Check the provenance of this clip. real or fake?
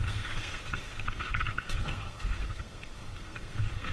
fake